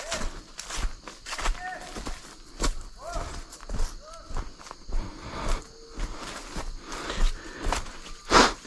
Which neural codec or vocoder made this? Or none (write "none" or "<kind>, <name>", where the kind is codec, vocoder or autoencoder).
none